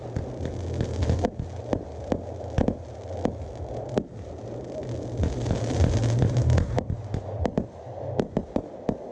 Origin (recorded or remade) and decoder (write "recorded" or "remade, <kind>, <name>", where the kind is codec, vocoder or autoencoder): recorded